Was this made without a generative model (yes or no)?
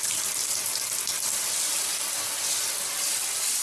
yes